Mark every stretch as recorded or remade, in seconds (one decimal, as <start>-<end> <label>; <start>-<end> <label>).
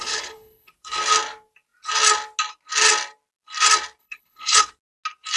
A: 0.0-0.7 remade; 0.7-4.0 recorded; 4.0-4.6 remade; 4.6-5.4 recorded